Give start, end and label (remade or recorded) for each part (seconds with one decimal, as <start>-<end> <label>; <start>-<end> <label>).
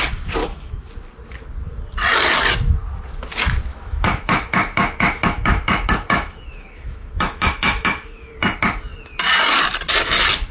0.0-0.4 recorded; 0.4-0.9 remade; 0.9-3.7 recorded; 3.7-8.3 remade; 8.3-10.5 recorded